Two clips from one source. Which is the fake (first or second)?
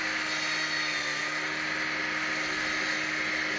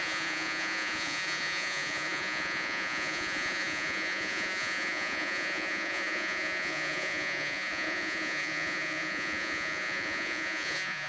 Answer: second